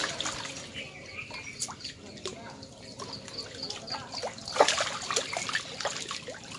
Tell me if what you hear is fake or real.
real